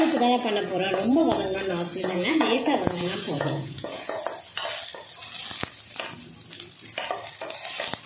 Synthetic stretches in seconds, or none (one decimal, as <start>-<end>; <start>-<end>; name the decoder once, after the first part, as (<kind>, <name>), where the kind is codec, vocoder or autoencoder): 0.7-1.4 (vocoder, Vocos); 1.9-4.2